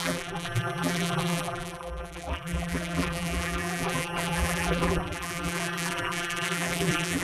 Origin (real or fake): fake